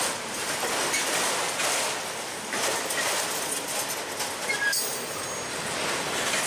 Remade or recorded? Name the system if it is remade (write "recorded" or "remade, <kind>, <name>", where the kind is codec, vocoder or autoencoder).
recorded